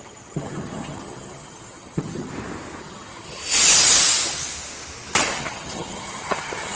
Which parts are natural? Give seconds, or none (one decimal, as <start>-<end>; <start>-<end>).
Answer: 2.3-2.8; 3.4-5.2